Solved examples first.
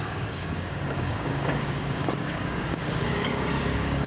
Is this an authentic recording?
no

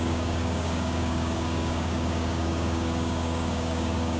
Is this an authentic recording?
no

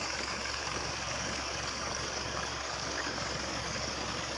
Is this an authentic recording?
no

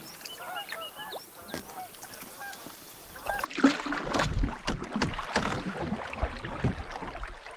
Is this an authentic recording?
yes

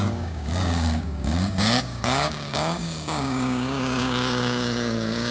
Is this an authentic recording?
no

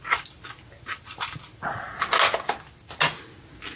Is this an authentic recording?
yes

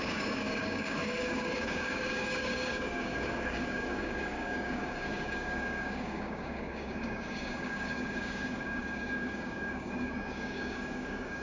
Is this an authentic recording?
no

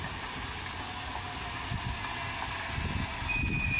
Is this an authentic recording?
yes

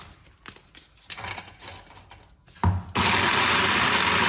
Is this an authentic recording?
yes